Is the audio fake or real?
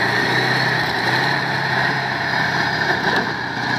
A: fake